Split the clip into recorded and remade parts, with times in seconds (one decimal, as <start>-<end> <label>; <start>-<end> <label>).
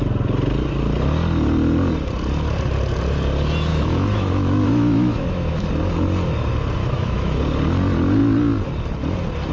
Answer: 0.0-3.7 recorded; 3.7-5.7 remade; 5.7-6.8 recorded; 6.8-7.4 remade; 7.4-9.5 recorded